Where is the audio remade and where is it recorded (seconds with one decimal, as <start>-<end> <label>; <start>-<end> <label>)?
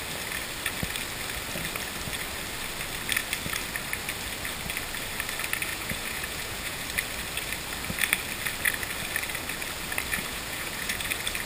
0.0-5.7 recorded; 5.7-6.8 remade; 6.8-10.1 recorded; 10.1-11.1 remade; 11.1-11.5 recorded